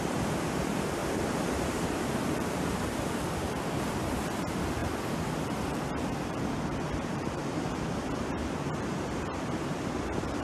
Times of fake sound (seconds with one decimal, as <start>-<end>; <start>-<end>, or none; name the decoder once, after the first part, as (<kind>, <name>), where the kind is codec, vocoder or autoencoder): 0.0-10.4 (vocoder, BigVGAN v2)